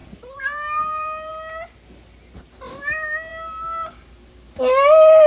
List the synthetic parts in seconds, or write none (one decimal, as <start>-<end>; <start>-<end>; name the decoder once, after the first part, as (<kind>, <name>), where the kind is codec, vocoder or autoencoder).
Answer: 0.0-1.3 (vocoder, BigVGAN v2); 3.3-4.6